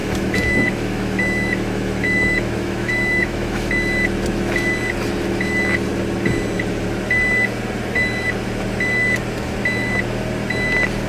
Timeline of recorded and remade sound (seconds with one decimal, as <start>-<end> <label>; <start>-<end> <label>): 0.0-3.7 remade; 3.7-11.1 recorded